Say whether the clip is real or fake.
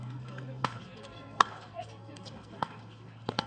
fake